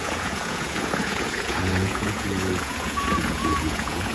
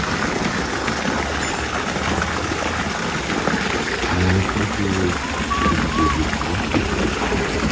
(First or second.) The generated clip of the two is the first